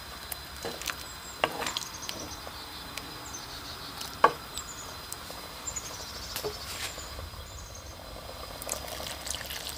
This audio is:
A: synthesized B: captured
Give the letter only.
B